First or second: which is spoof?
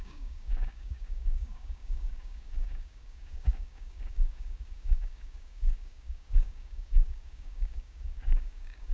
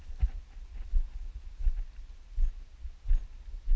first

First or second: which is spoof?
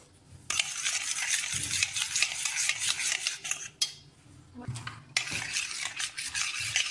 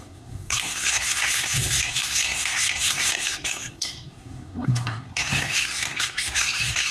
second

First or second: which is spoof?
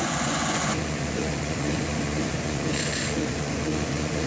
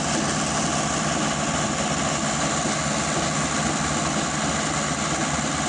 first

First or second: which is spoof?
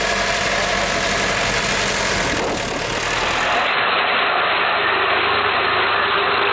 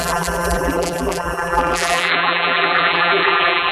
second